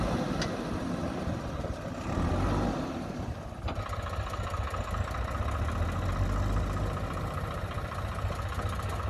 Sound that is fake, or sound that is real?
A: real